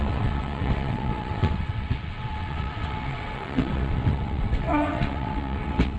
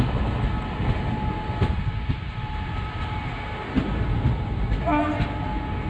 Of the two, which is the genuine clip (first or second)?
second